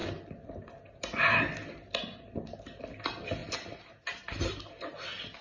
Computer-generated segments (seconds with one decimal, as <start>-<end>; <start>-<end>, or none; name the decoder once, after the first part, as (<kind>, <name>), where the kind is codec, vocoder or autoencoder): none